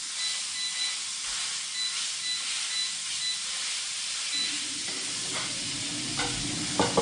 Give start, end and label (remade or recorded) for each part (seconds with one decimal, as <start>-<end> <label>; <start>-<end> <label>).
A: 0.0-7.0 recorded